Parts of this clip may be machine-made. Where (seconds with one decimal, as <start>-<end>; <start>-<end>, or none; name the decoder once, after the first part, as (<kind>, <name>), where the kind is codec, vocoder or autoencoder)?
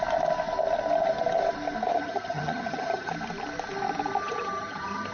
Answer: 1.9-3.1 (vocoder, HiFi-GAN); 4.2-5.1